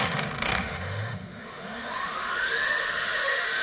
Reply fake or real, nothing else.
fake